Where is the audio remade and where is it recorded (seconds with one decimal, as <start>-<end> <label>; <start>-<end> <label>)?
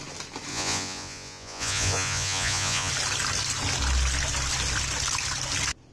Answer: 0.0-0.5 recorded; 0.5-2.9 remade; 2.9-5.9 recorded